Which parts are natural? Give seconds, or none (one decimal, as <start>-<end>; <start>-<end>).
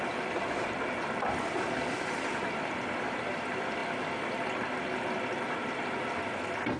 0.0-6.8